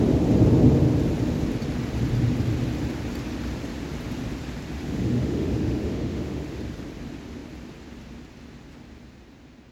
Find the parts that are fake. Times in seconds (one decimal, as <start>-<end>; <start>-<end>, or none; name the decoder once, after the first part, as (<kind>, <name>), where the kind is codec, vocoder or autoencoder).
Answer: 4.8-6.6 (autoencoder, DAC-VAE)